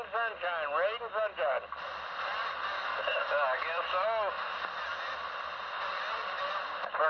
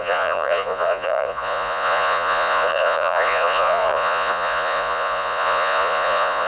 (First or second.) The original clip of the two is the first